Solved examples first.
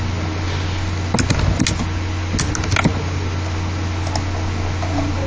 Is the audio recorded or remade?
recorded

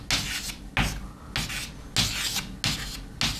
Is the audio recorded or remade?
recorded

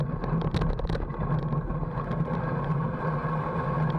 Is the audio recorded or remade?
recorded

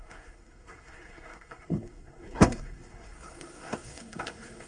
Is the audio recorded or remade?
remade